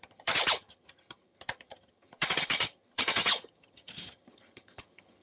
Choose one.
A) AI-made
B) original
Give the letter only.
A